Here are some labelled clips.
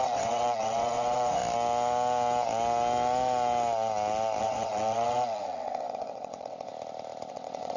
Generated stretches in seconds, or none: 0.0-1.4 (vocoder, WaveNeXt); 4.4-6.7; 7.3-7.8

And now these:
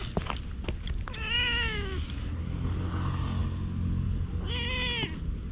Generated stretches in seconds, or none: none

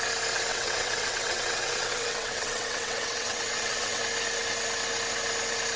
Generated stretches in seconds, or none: 0.5-4.0 (vocoder, WaveNeXt)

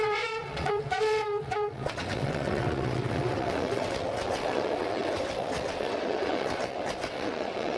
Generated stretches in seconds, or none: 0.0-7.8 (vocoder, WaveNeXt)